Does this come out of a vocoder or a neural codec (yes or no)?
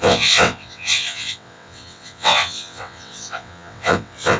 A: yes